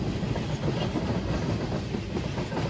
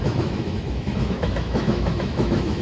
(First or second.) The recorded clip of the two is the first